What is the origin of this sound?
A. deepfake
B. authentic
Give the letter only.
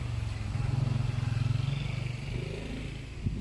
B